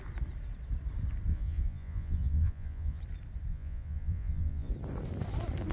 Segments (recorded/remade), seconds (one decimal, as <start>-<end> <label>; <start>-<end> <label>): 0.0-1.3 recorded; 1.3-3.0 remade; 3.0-3.5 recorded; 3.5-4.7 remade; 4.7-5.7 recorded